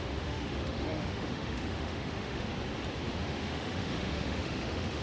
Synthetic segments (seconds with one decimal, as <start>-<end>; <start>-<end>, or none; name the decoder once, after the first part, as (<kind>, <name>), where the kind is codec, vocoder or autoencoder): 0.0-2.5 (autoencoder, DAC-VAE); 3.1-5.0